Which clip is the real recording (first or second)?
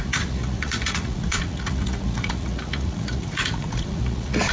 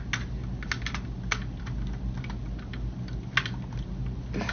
second